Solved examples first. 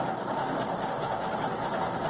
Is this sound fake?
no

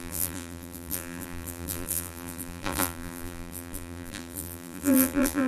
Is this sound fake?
yes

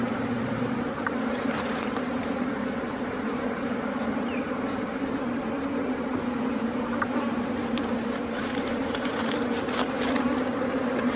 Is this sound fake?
yes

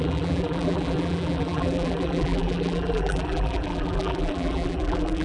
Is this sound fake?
yes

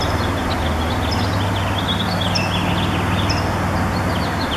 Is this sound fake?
no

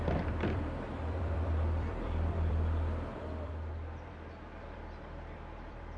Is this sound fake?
yes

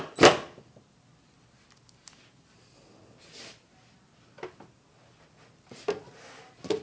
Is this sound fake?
no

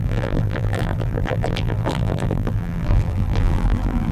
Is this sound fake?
yes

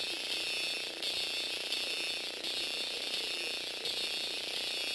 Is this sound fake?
no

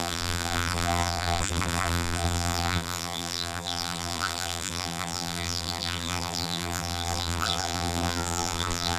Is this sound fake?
yes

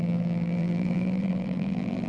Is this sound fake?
yes